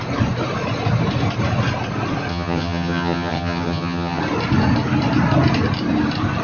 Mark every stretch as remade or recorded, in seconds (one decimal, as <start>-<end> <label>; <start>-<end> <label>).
0.0-2.3 recorded; 2.3-4.2 remade; 4.2-6.4 recorded